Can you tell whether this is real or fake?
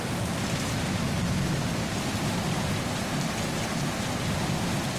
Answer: real